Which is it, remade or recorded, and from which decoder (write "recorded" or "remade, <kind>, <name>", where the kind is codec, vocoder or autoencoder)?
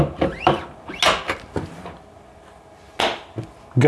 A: recorded